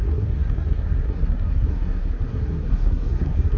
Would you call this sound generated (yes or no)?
yes